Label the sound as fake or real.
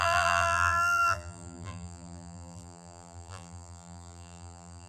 fake